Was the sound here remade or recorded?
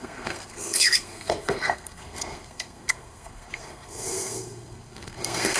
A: remade